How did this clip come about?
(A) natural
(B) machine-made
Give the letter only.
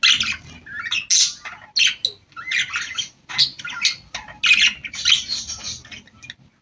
A